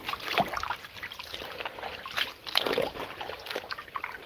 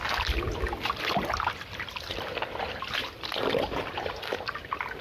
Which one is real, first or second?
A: second